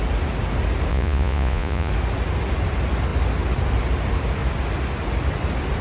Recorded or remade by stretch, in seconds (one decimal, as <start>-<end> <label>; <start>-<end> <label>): 0.0-0.9 recorded; 0.9-1.9 remade; 1.9-5.8 recorded